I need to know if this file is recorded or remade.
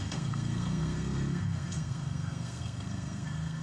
remade